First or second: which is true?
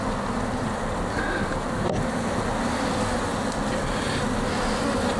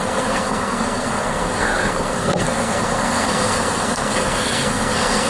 first